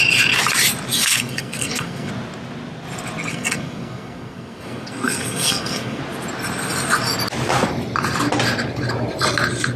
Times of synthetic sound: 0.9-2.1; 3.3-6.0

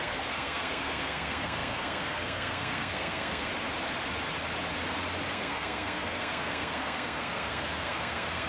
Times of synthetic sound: 0.0-3.5; 5.3-8.5

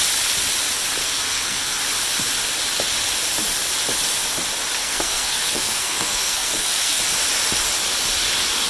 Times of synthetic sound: 1.0-1.8; 4.8-7.0

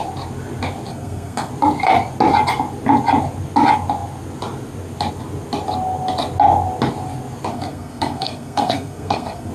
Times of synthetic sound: 0.9-1.5; 7.5-9.5